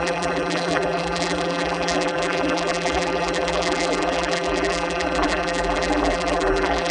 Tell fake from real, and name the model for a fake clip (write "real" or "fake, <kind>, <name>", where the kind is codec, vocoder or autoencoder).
fake, vocoder, BigVGAN v2